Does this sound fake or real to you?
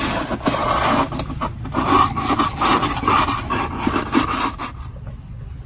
fake